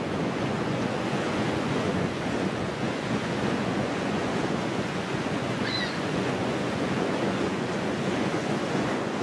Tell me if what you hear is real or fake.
fake